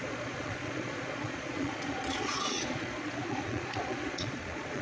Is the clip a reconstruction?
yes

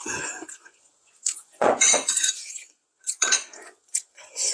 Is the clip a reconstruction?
yes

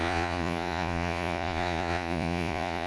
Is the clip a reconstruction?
yes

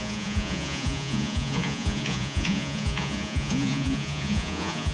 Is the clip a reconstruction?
yes